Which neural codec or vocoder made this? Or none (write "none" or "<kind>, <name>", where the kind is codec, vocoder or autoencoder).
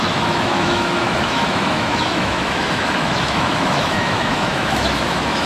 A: autoencoder, DAC-VAE